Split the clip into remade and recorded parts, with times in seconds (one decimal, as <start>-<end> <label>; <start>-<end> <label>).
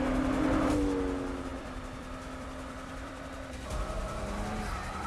0.0-1.5 recorded; 1.5-3.2 remade; 3.2-5.1 recorded